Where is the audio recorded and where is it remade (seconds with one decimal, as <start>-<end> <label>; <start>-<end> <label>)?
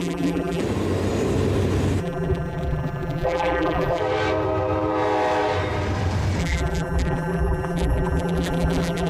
0.0-0.6 remade; 0.6-2.0 recorded; 2.0-4.0 remade; 4.0-6.4 recorded; 6.4-9.1 remade